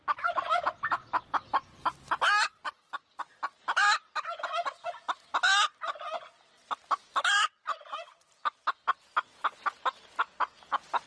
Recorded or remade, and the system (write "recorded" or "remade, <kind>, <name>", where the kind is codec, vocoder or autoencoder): recorded